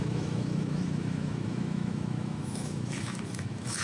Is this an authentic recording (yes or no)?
no